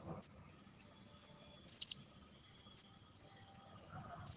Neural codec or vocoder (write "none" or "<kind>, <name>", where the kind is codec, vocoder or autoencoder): none